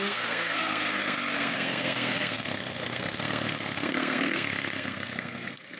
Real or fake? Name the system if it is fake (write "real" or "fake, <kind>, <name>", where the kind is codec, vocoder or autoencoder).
fake, codec, SNAC